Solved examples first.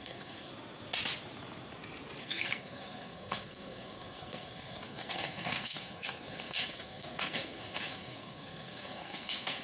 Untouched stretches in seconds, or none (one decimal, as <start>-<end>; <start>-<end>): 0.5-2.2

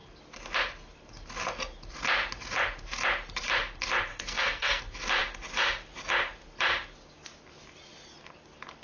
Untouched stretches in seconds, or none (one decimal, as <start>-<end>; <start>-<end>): 0.0-4.1; 4.8-8.8

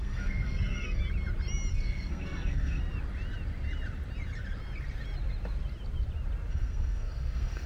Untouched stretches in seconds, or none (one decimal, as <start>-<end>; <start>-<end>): 1.0-1.7; 2.8-6.5

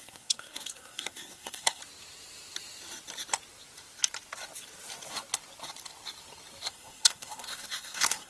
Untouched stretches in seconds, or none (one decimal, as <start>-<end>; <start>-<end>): 1.8-6.7